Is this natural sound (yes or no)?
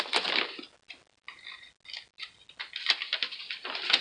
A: yes